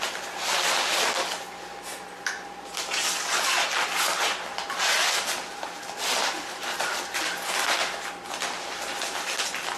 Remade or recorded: recorded